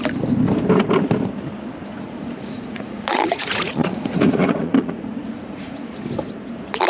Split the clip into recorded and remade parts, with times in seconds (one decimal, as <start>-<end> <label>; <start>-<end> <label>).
0.0-1.9 recorded; 1.9-6.0 remade; 6.0-6.9 recorded